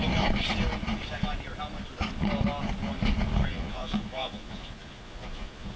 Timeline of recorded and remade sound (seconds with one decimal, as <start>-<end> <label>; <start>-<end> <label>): 0.0-3.5 recorded; 3.5-5.8 remade